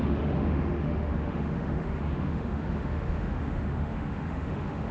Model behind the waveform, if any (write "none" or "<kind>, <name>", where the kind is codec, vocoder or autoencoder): autoencoder, DAC-VAE